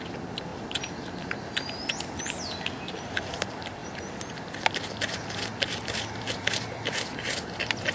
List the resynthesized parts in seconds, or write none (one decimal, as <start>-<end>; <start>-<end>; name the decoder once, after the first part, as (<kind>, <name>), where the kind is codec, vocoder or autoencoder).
none